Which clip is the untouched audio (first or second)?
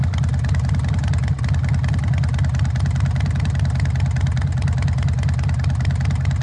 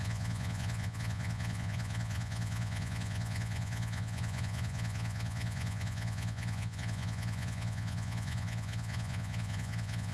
first